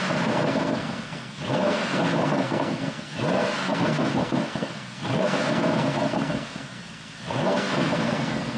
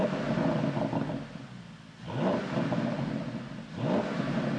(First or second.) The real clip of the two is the second